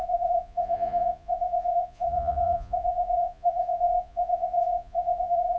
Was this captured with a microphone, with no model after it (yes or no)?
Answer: no